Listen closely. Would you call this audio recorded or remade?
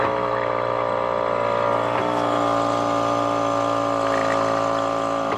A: recorded